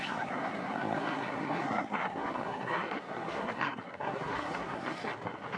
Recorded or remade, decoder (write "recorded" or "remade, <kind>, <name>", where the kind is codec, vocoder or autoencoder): remade, codec, SNAC